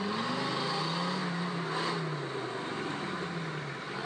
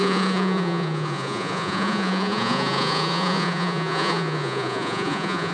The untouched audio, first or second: first